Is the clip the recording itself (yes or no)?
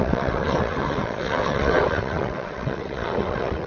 no